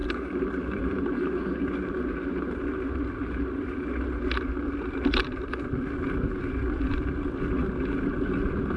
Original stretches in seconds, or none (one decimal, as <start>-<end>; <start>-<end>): 1.5-8.8